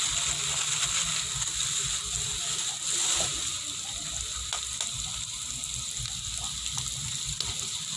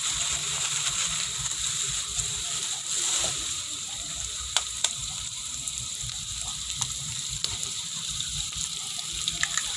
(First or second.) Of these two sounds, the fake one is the second